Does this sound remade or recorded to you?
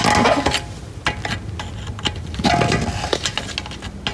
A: recorded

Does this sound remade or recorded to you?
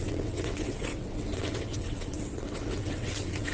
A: remade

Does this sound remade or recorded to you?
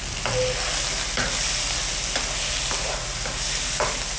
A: recorded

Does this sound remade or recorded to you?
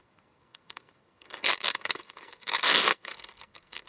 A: remade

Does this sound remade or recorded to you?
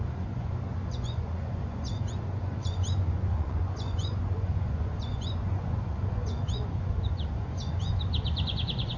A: remade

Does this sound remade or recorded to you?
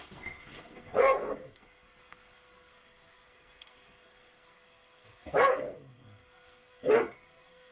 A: remade